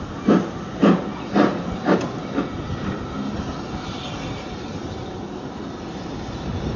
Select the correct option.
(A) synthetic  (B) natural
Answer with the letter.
B